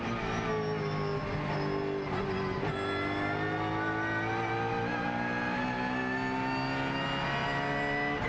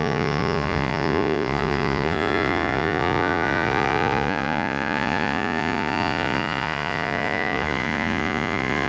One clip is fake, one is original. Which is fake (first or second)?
second